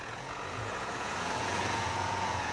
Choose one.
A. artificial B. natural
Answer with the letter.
A